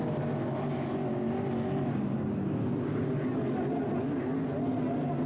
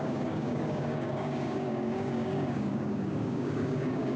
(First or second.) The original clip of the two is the first